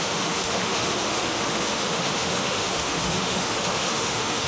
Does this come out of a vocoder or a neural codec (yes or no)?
yes